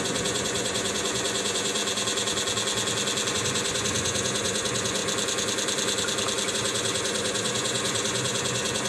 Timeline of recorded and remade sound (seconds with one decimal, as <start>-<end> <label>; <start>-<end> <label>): 0.0-1.8 remade; 1.8-3.3 recorded; 3.3-5.0 remade; 5.0-6.5 recorded; 6.5-8.9 remade